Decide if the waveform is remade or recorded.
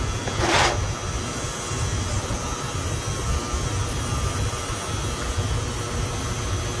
recorded